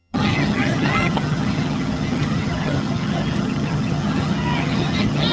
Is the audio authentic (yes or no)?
no